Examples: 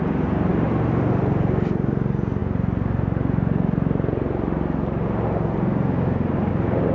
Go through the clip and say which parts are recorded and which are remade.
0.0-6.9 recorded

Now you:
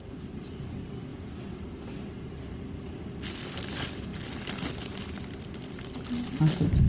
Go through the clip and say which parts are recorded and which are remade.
0.0-4.1 remade; 4.1-4.7 recorded; 4.7-6.9 remade

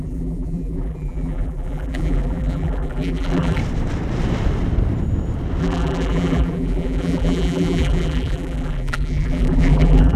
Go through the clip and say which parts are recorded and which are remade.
0.0-3.6 remade; 3.6-5.6 recorded; 5.6-10.2 remade